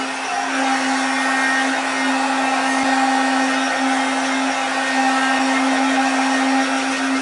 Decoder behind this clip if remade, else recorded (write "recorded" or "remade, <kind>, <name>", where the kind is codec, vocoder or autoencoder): recorded